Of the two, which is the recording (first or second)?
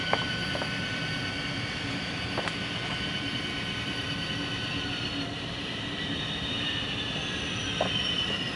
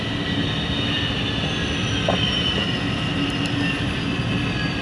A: second